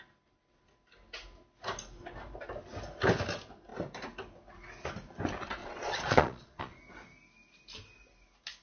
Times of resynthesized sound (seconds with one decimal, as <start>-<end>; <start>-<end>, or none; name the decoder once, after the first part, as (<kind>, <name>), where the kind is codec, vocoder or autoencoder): 5.6-6.8 (vocoder, Vocos)